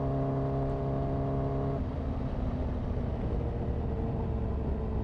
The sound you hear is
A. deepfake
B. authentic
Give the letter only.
B